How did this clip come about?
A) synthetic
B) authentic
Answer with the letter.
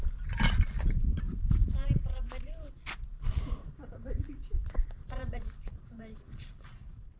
A